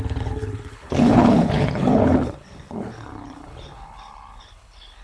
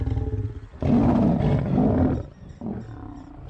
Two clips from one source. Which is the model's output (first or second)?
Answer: first